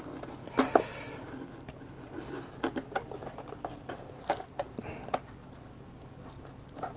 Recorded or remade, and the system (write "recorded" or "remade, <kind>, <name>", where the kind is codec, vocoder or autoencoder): recorded